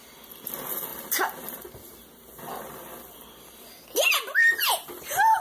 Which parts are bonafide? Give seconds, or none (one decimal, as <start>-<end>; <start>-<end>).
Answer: 0.0-5.4